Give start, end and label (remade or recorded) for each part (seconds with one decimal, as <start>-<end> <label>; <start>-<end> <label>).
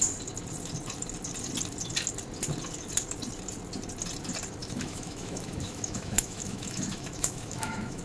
0.0-4.6 recorded; 4.6-8.0 remade